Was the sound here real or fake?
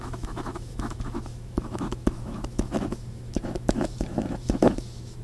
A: fake